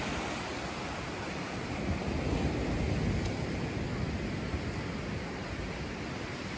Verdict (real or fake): real